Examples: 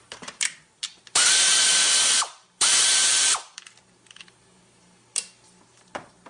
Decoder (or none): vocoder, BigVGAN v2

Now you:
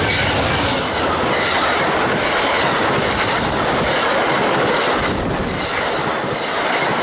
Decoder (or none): none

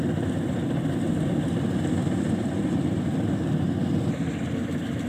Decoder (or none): none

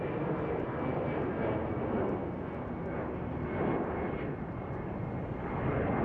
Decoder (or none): none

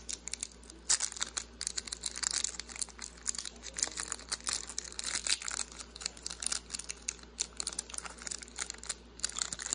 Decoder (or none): none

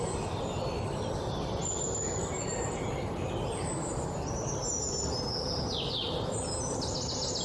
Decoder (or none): none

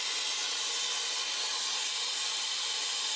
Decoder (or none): none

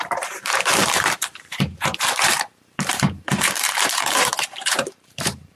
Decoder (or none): vocoder, BigVGAN v2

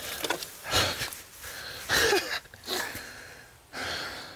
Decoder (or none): none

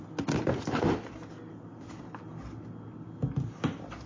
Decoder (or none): none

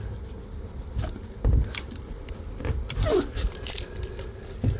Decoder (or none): none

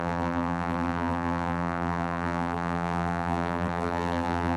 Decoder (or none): vocoder, BigVGAN v2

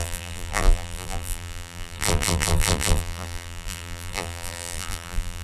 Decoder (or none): vocoder, BigVGAN v2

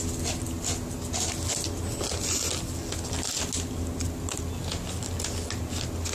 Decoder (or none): none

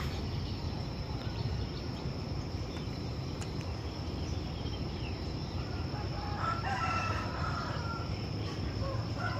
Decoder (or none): vocoder, BigVGAN v2